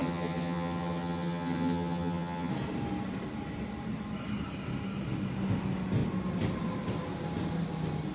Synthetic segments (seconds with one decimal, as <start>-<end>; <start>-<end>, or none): 0.0-2.5